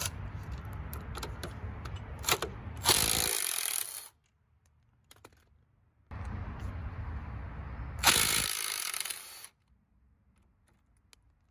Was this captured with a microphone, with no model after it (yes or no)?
yes